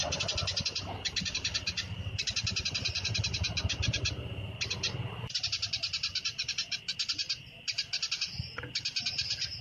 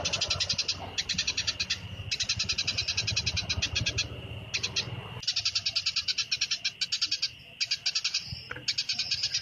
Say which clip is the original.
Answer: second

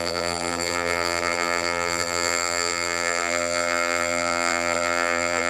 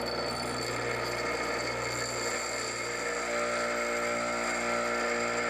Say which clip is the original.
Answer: second